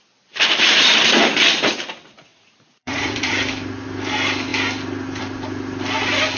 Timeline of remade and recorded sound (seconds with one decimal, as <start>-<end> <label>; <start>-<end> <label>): 0.0-2.3 recorded; 2.3-3.3 remade; 3.3-6.4 recorded